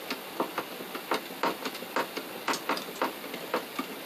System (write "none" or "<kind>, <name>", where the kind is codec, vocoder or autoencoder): none